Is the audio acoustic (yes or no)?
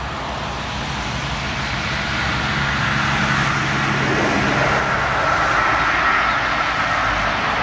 yes